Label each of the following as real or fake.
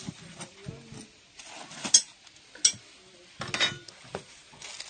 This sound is real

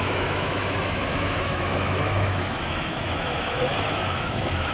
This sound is fake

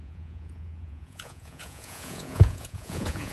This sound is fake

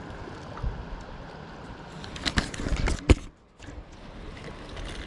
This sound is real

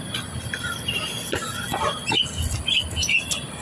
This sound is real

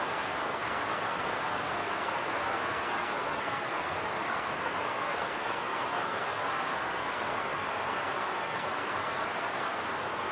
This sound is fake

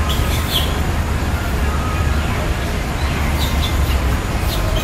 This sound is fake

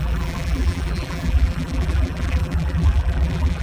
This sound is fake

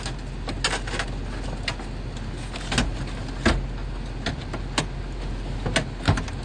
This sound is real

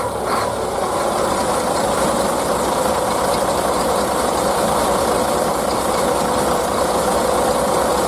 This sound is fake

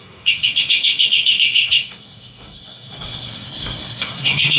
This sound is fake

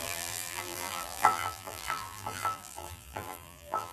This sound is fake